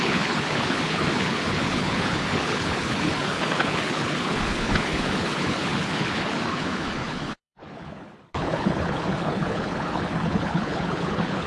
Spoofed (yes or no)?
yes